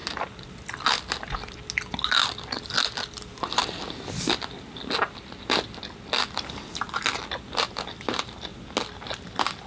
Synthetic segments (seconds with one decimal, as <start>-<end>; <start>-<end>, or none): none